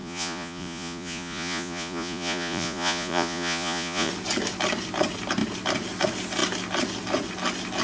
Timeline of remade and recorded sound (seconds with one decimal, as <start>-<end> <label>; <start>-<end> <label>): 0.0-4.1 remade; 4.1-7.8 recorded